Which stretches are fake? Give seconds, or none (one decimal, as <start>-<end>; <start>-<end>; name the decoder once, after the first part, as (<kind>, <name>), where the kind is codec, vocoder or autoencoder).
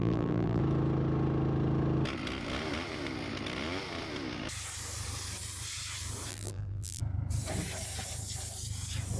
0.0-0.6 (vocoder, BigVGAN v2); 6.3-7.0